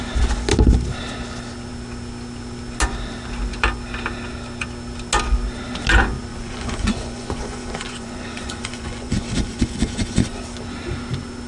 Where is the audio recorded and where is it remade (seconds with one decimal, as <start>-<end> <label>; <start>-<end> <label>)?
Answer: 0.0-6.3 recorded; 6.3-10.4 remade; 10.4-11.5 recorded